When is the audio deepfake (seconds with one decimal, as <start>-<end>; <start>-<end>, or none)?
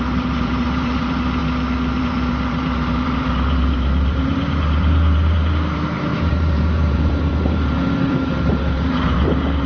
0.0-1.4; 2.0-9.7